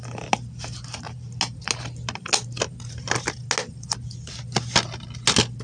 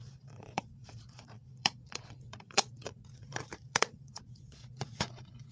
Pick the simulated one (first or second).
second